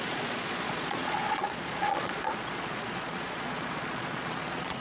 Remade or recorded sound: remade